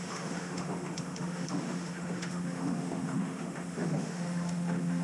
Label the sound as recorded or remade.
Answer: remade